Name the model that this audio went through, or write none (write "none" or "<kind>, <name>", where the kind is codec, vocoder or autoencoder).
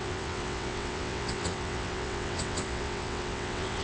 vocoder, WaveNeXt